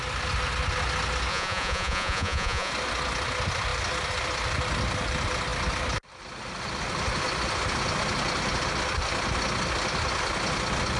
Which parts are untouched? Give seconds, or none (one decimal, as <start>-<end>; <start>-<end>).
0.0-1.3; 2.7-11.0